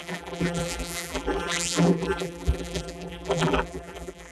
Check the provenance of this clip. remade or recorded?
remade